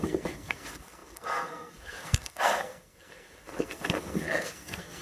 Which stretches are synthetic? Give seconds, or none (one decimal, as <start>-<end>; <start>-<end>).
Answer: 0.0-5.0